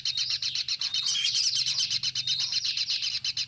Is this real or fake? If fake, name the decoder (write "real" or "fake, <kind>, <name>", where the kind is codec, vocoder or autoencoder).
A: real